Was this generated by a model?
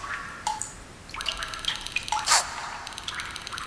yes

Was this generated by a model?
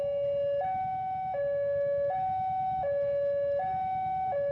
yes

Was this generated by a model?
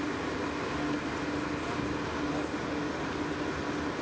no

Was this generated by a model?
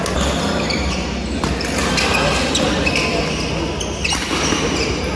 no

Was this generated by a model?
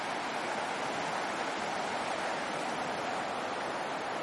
no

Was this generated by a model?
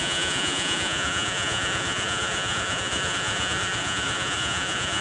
yes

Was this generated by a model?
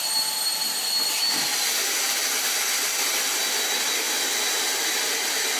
no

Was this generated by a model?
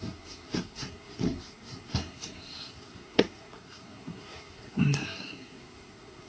yes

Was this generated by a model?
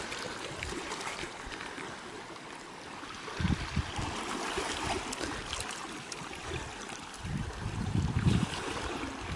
yes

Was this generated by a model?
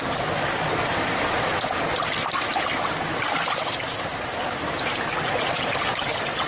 no